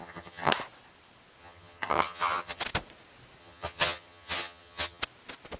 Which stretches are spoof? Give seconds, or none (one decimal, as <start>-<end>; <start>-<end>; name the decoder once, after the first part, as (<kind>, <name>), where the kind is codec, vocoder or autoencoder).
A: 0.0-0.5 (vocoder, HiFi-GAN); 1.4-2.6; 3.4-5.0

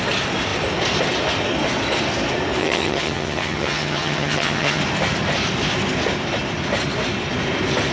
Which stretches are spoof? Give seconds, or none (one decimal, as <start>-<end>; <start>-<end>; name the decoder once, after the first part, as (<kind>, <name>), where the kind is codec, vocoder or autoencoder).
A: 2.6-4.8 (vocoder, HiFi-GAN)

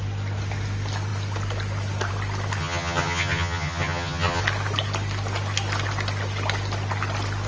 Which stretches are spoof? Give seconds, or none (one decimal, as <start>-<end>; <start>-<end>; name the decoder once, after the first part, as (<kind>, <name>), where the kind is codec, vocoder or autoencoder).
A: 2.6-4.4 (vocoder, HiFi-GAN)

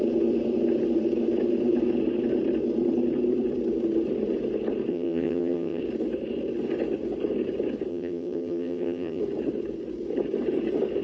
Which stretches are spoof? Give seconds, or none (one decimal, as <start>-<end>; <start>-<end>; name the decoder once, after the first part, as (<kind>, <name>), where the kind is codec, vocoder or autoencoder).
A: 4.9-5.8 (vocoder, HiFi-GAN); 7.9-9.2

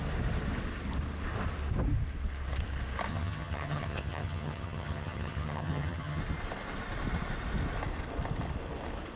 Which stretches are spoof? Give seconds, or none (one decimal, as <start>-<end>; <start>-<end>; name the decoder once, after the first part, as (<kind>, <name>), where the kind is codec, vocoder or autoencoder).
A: 3.1-6.2 (vocoder, HiFi-GAN)